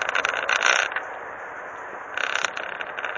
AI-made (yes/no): no